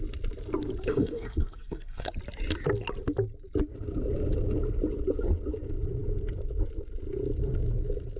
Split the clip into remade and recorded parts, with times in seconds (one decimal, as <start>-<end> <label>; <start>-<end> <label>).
0.0-0.9 recorded; 0.9-2.1 remade; 2.1-8.2 recorded